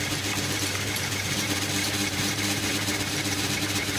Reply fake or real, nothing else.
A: fake